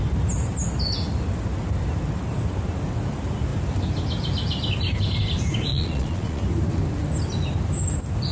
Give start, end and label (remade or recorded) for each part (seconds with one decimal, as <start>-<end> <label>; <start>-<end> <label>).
0.0-5.7 recorded; 5.7-6.4 remade; 6.4-8.3 recorded